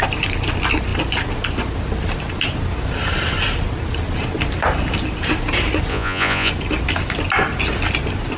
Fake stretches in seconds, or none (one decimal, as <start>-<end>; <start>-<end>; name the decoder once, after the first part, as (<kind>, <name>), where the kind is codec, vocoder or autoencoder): 5.9-6.5 (vocoder, Vocos)